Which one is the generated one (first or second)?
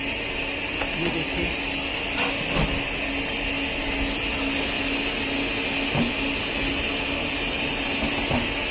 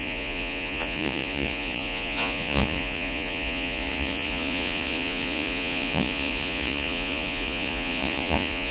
second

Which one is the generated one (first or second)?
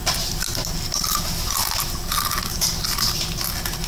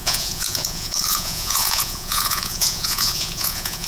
second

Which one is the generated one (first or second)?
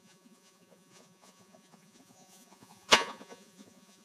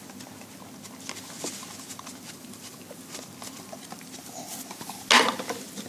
first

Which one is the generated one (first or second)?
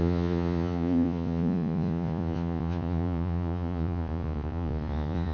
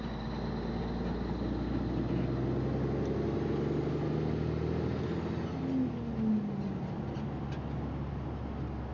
first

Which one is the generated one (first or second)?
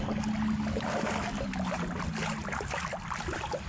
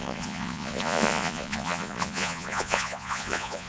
second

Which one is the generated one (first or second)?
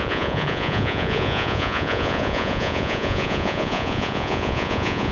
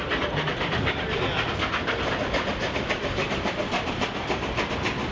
first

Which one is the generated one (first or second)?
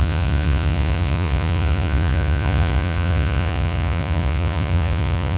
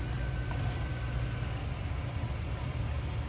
first